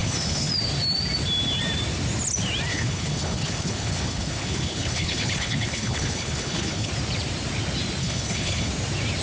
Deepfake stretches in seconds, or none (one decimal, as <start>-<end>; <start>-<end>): 0.0-0.5; 2.7-6.9; 8.0-8.7